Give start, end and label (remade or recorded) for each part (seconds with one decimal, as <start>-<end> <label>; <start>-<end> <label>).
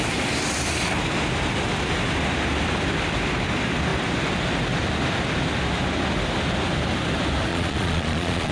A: 0.0-7.5 recorded; 7.5-8.5 remade